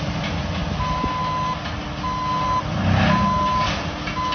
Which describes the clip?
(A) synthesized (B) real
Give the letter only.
B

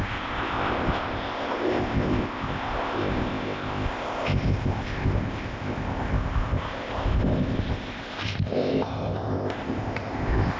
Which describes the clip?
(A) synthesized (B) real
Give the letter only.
A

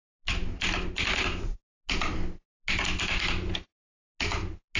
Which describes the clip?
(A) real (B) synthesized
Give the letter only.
A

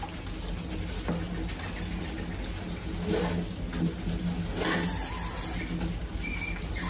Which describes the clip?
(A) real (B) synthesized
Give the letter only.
A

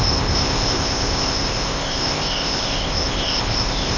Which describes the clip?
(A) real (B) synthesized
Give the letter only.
B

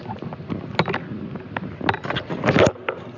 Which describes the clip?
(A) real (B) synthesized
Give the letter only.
A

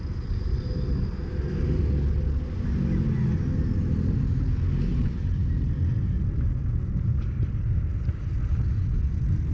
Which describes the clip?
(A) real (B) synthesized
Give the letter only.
A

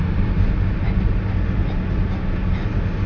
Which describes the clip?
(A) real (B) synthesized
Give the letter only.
A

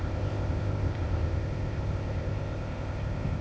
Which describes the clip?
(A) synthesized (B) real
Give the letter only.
A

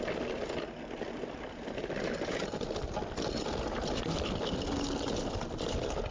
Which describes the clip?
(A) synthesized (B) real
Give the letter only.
B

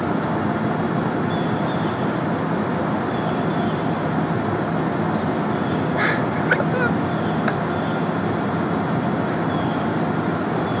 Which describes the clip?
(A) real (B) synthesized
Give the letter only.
A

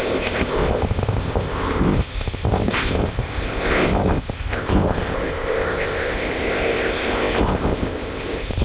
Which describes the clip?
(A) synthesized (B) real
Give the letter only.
A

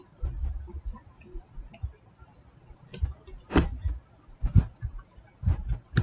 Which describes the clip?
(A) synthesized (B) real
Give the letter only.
B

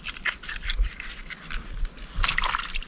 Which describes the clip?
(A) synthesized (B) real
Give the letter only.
B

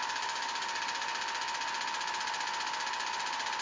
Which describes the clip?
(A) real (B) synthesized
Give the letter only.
A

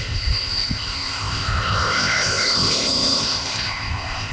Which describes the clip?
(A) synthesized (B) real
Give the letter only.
A